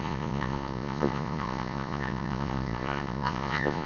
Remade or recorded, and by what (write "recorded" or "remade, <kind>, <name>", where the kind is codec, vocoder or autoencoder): remade, vocoder, Vocos